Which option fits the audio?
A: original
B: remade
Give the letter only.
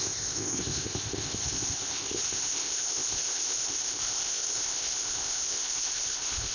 B